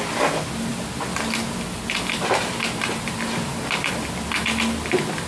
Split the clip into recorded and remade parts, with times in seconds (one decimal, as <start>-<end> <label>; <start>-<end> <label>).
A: 0.0-5.3 recorded